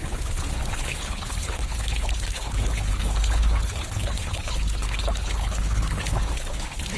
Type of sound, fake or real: fake